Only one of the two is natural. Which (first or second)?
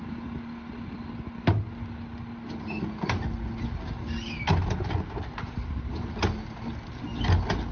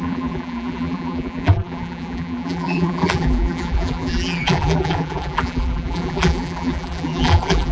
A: first